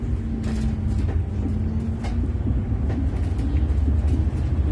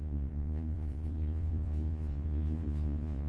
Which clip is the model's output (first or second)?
second